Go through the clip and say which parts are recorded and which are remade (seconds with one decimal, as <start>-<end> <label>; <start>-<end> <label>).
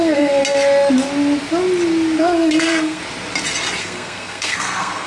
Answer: 0.0-0.4 remade; 0.4-2.2 recorded; 2.2-3.0 remade; 3.0-3.8 recorded; 3.8-5.1 remade